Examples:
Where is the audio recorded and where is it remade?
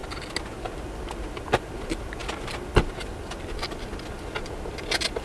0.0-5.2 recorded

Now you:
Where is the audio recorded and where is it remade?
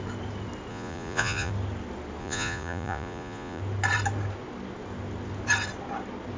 0.0-0.7 recorded; 0.7-1.5 remade; 1.5-2.2 recorded; 2.2-3.6 remade; 3.6-6.4 recorded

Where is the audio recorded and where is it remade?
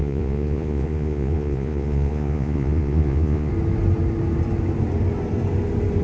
0.0-3.5 remade; 3.5-6.0 recorded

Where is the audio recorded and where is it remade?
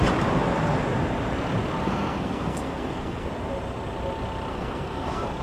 0.0-1.8 recorded; 1.8-3.3 remade; 3.3-4.5 recorded; 4.5-5.4 remade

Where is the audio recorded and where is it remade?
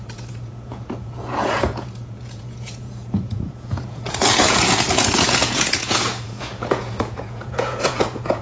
0.0-8.4 remade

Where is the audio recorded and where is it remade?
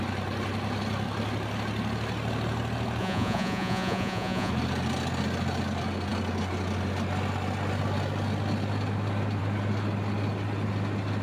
0.0-3.0 recorded; 3.0-4.5 remade; 4.5-11.2 recorded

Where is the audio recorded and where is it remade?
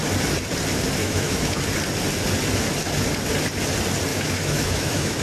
0.0-1.0 recorded; 1.0-1.6 remade; 1.6-4.1 recorded; 4.1-5.2 remade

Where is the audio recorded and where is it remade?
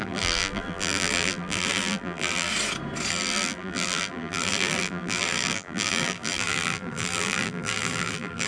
0.0-2.5 remade; 2.5-3.1 recorded; 3.1-8.5 remade